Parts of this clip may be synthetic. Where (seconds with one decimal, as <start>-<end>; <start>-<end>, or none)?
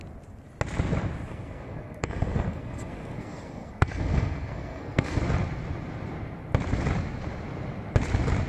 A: 1.3-5.2